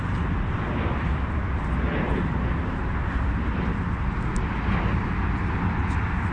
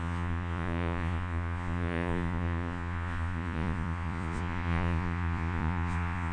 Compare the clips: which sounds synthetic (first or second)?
second